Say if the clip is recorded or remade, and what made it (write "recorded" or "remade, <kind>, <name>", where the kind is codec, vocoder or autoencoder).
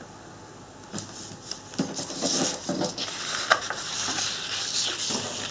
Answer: recorded